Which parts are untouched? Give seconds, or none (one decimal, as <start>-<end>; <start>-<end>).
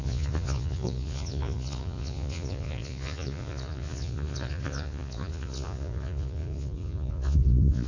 none